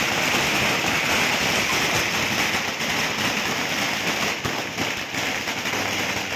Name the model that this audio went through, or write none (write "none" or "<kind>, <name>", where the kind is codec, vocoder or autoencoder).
none